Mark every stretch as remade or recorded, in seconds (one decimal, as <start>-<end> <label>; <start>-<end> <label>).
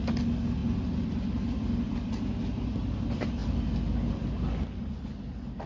0.0-5.7 recorded